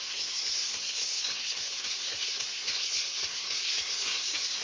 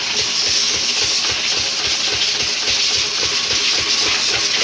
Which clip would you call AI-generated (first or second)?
first